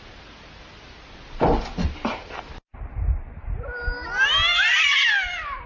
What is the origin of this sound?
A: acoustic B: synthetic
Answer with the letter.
A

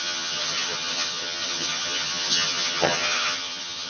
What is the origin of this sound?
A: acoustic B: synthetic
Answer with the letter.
B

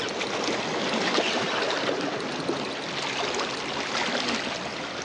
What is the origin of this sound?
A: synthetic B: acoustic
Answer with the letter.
B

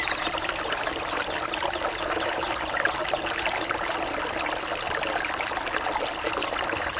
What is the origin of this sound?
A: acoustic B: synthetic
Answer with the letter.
A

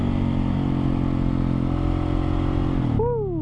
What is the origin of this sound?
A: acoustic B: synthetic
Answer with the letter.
A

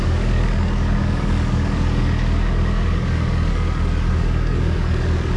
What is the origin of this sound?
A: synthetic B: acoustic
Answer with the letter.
A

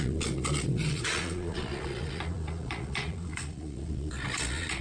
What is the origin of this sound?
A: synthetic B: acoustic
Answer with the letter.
A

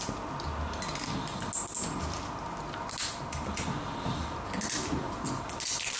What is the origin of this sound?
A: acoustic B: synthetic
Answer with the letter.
A